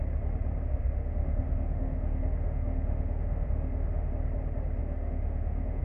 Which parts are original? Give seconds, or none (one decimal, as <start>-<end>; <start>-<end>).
0.0-0.6; 4.1-4.8